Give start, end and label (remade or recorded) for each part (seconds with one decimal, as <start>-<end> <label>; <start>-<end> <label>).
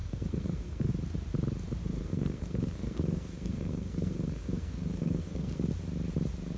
0.0-0.9 remade; 0.9-1.8 recorded; 1.8-5.7 remade; 5.7-6.6 recorded